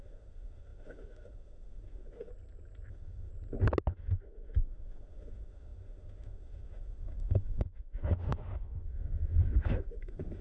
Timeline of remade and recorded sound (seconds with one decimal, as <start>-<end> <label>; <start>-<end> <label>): 0.0-2.3 remade; 2.3-2.9 recorded; 2.9-3.3 remade; 3.3-3.9 recorded; 3.9-10.4 remade